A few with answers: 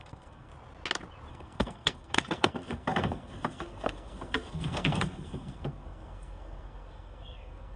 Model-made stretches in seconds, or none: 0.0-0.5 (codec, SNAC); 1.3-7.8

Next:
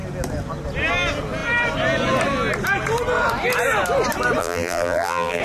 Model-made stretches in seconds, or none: 4.4-5.4 (vocoder, BigVGAN v2)

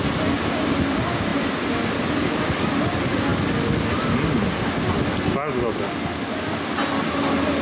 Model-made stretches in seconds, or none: none

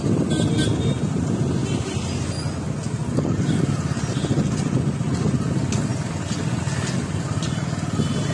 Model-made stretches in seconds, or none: none

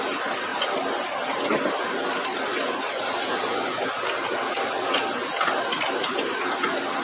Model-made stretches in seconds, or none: none